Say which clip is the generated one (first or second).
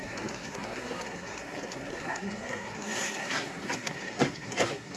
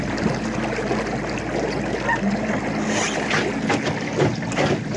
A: first